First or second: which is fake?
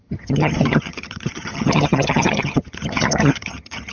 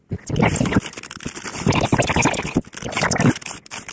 first